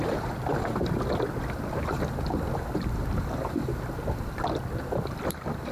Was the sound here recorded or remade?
recorded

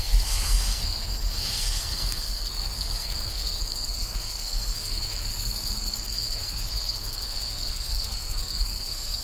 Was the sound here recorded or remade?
remade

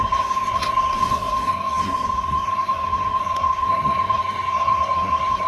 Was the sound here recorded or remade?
remade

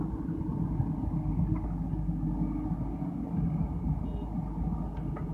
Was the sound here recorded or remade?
recorded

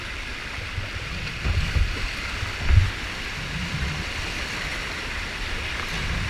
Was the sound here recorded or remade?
remade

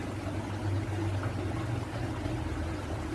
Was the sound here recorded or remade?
recorded